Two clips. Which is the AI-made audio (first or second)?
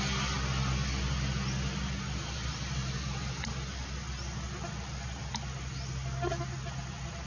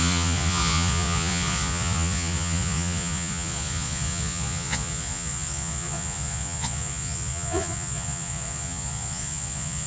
second